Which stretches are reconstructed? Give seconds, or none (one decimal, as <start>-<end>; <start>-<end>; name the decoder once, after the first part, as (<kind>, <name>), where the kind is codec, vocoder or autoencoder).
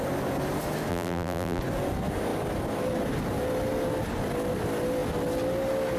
0.9-1.6 (vocoder, BigVGAN v2)